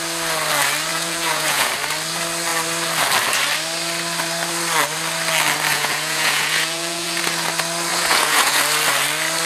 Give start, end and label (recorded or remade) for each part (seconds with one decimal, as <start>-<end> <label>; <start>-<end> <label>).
0.0-0.9 recorded; 0.9-1.7 remade; 1.7-5.7 recorded; 5.7-7.2 remade; 7.2-7.9 recorded; 7.9-8.6 remade; 8.6-9.5 recorded